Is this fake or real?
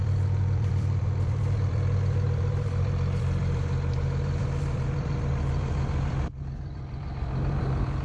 fake